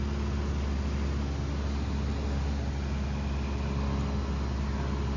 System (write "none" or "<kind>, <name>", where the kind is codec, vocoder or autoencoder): none